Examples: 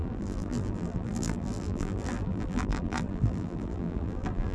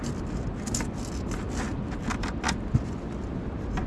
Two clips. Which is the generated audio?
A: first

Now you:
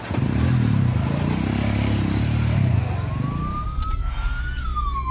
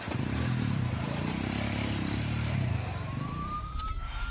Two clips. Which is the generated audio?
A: second